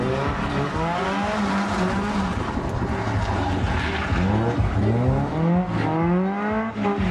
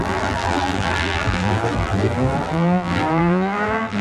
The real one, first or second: first